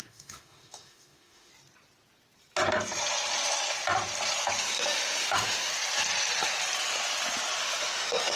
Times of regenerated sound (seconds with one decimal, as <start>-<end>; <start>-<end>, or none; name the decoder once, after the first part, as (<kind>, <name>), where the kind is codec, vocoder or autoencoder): 0.0-1.5 (autoencoder, DAC-VAE); 4.6-5.7; 7.6-8.4